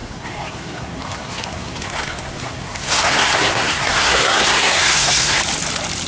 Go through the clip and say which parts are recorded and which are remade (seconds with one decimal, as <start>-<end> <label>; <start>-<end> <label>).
0.0-5.4 remade; 5.4-6.1 recorded